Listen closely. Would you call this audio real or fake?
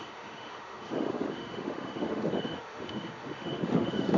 fake